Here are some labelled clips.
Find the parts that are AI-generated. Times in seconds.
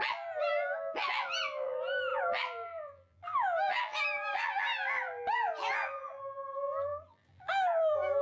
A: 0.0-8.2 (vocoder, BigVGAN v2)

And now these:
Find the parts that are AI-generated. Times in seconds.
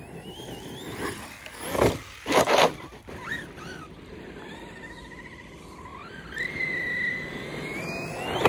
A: 5.9-6.5 (vocoder, BigVGAN v2)